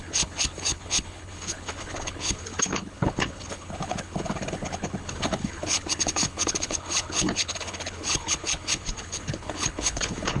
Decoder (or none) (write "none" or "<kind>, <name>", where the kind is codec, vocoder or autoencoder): codec, HILCodec